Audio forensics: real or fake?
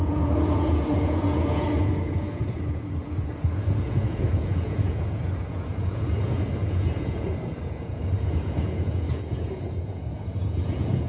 fake